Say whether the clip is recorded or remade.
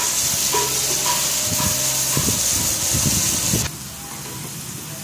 recorded